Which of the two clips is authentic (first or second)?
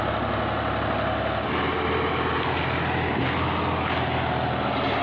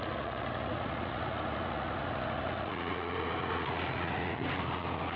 first